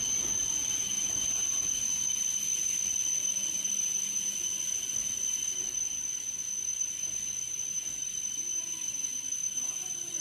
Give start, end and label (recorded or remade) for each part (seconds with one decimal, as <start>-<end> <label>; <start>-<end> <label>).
0.0-10.2 recorded